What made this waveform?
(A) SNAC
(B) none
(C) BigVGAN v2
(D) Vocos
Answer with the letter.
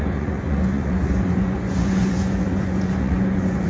D